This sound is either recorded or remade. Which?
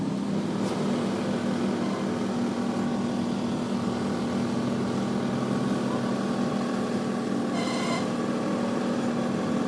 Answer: recorded